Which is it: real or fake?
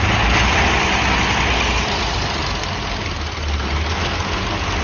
real